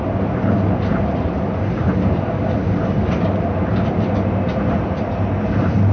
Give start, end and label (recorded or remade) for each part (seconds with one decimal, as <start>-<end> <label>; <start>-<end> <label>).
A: 0.0-5.9 recorded